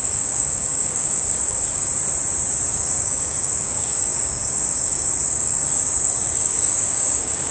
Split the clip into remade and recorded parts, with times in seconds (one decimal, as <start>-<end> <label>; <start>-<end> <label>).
0.0-1.9 remade; 1.9-2.7 recorded; 2.7-7.5 remade